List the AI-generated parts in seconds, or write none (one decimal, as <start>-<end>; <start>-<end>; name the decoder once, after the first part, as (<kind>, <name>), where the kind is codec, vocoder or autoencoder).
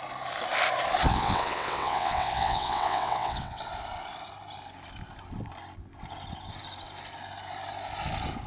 1.1-3.6 (vocoder, WaveNeXt)